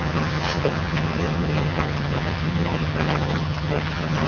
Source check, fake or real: fake